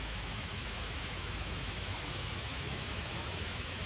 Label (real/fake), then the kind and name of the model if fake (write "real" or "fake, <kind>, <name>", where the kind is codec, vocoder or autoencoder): fake, autoencoder, DAC-VAE